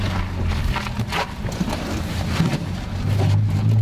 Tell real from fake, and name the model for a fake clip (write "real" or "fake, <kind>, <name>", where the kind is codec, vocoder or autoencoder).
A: real